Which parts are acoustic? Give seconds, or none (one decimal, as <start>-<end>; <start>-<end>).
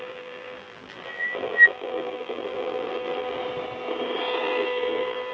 3.4-4.4